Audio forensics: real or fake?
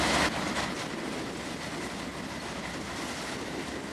real